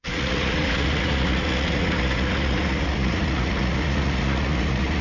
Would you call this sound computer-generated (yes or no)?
yes